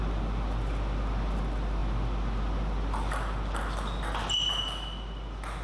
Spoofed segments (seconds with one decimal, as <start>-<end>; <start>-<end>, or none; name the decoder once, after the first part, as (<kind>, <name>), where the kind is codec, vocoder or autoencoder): none